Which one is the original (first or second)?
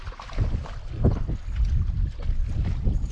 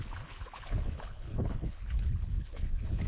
first